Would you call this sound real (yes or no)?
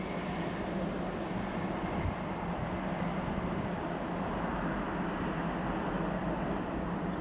yes